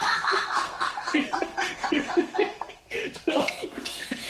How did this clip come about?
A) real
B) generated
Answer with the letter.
B